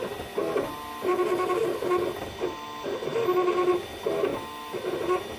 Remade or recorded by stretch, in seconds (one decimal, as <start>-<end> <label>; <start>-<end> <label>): 0.0-5.4 recorded